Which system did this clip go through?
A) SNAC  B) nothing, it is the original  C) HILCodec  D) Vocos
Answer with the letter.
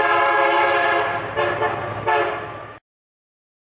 B